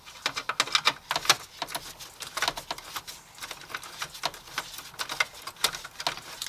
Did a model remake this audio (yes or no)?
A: no